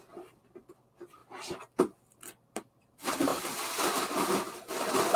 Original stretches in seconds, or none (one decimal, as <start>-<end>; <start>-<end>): 1.2-2.5